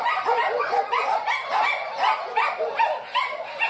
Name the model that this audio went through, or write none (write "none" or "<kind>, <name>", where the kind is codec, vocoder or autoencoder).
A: none